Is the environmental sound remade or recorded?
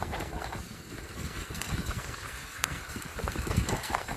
remade